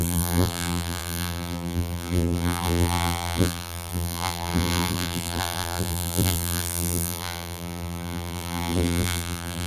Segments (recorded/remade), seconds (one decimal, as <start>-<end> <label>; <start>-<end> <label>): 0.0-9.7 remade